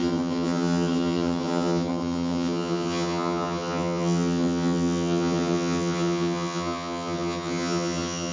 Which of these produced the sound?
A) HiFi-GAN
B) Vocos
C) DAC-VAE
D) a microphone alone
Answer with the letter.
A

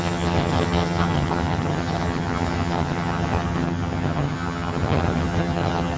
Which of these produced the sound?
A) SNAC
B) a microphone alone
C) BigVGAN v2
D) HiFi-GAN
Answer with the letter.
D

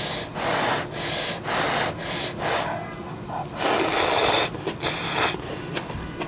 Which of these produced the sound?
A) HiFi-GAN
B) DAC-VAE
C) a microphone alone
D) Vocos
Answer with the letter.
C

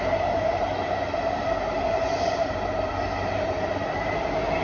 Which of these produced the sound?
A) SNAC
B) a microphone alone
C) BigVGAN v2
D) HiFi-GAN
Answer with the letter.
B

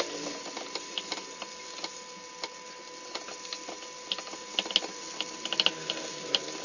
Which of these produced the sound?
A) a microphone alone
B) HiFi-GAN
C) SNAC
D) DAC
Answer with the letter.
A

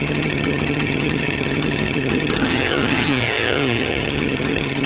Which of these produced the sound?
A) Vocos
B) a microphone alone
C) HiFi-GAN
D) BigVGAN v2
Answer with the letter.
C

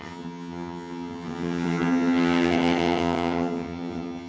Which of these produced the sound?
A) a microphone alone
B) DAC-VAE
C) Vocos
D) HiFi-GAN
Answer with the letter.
D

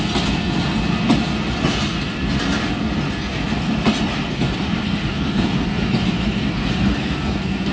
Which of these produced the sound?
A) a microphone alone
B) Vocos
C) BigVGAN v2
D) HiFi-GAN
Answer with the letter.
A